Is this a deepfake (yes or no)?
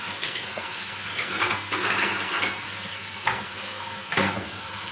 yes